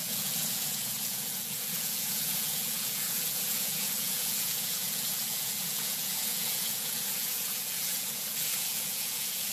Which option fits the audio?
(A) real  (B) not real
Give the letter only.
B